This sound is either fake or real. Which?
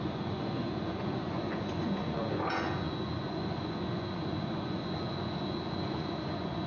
fake